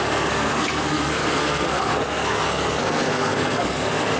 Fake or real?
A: fake